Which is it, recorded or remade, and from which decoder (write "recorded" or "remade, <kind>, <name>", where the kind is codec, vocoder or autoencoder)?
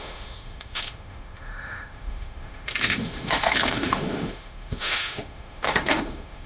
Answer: remade, autoencoder, DAC-VAE